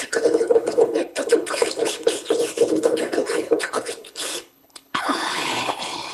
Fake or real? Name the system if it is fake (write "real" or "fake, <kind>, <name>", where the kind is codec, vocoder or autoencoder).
fake, codec, HILCodec